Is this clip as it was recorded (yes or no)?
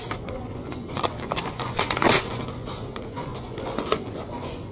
no